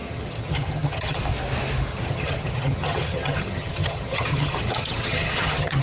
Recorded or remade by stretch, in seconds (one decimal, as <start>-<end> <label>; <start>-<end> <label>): 0.0-1.2 remade; 1.2-1.9 recorded; 1.9-5.8 remade